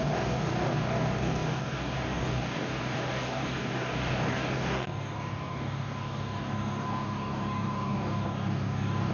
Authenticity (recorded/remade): remade